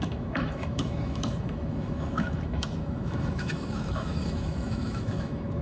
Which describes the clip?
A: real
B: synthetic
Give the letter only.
B